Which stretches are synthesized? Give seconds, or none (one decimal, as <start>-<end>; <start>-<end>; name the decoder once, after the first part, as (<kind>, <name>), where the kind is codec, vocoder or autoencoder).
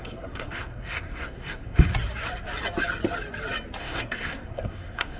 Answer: 0.0-1.9 (codec, SNAC); 3.8-5.2